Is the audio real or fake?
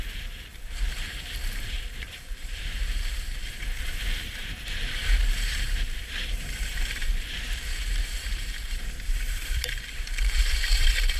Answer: fake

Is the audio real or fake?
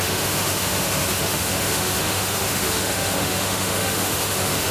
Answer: fake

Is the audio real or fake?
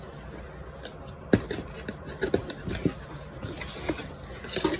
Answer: real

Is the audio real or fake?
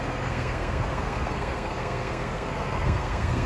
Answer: fake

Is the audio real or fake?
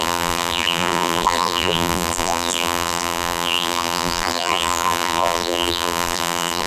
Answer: fake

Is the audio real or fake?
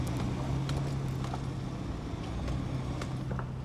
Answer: real